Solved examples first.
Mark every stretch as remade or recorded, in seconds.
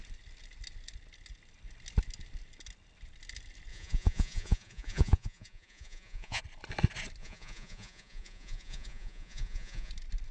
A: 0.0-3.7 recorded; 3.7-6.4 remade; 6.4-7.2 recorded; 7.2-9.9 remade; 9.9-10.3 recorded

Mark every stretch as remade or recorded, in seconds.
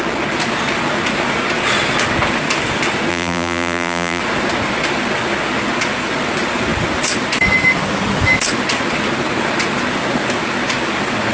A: 0.0-3.1 recorded; 3.1-4.2 remade; 4.2-11.3 recorded